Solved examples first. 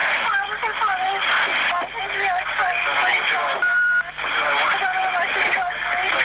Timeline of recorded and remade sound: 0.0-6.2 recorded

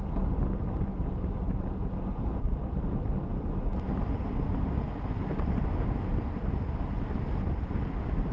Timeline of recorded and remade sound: 0.0-8.3 recorded

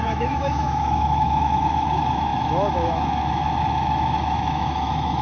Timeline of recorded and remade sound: 0.0-5.2 remade

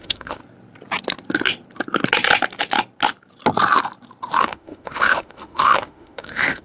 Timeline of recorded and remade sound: 0.0-0.4 remade; 0.4-4.4 recorded; 4.4-6.6 remade

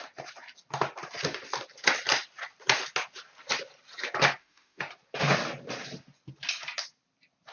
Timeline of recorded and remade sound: 0.0-4.4 recorded; 4.4-4.9 remade; 4.9-7.5 recorded

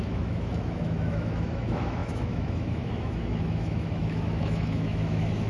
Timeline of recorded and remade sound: 0.0-5.5 remade